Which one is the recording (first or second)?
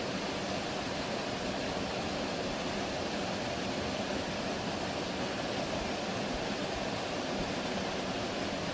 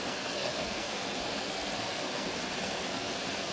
first